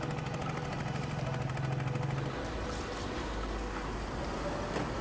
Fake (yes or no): no